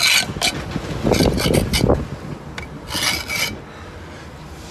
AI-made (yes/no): no